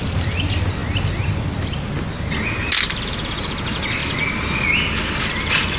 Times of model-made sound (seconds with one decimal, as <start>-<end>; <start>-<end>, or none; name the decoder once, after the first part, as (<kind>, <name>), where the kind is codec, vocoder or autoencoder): none

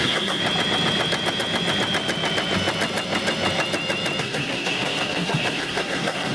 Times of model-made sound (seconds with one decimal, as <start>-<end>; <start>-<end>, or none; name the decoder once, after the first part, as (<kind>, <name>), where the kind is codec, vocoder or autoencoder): 0.0-0.4 (codec, SNAC); 4.2-6.3

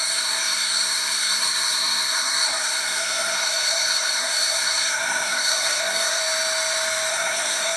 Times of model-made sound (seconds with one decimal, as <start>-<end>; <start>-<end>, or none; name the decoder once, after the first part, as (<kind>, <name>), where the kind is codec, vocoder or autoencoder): 0.0-6.2 (codec, SNAC); 7.1-7.8